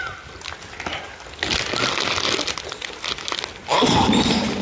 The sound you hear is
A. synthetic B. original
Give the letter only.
B